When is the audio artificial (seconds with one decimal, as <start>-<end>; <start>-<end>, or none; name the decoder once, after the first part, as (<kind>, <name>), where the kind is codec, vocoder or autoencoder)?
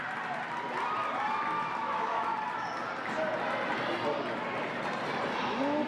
1.8-2.3 (autoencoder, DAC-VAE)